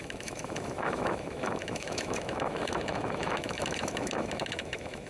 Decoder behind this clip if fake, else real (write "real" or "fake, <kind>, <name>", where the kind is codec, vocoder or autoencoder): fake, autoencoder, DAC-VAE